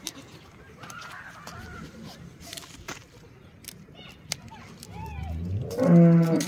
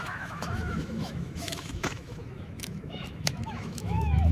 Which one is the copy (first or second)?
second